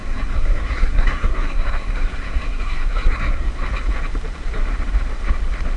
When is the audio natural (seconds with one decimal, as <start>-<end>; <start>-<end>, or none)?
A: 3.5-5.8